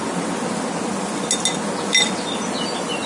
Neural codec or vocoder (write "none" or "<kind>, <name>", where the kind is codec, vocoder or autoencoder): none